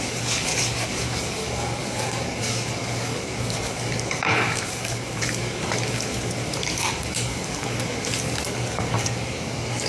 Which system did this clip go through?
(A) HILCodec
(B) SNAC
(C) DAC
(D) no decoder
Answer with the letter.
C